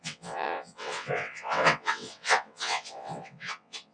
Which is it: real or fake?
fake